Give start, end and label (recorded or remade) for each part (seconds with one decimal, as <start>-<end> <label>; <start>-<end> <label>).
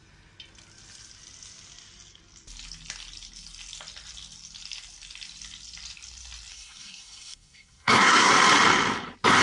0.0-6.5 recorded; 6.5-8.3 remade; 8.3-9.4 recorded